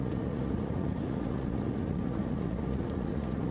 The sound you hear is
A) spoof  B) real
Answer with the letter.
A